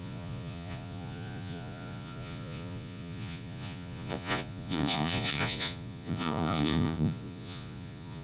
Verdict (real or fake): fake